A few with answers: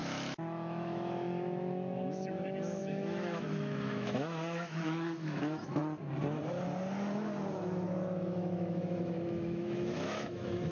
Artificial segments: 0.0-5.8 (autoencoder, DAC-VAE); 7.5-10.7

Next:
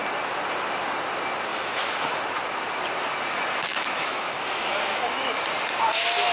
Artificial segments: 1.5-2.2 (autoencoder, DAC-VAE); 3.7-5.4

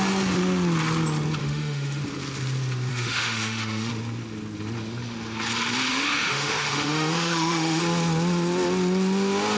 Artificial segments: 1.4-2.0 (autoencoder, DAC-VAE); 2.9-3.9; 5.9-7.8

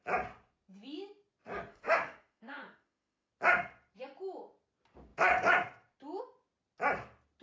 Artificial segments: 1.7-3.3 (autoencoder, DAC-VAE)

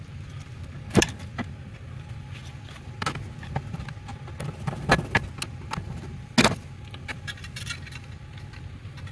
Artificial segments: none

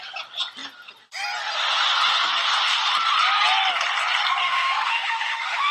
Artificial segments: 4.4-5.7 (autoencoder, DAC-VAE)

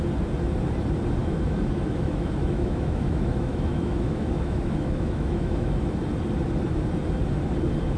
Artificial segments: 1.2-5.8 (autoencoder, DAC-VAE)